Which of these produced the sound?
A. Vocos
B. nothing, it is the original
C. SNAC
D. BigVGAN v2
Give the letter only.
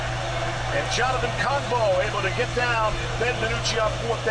B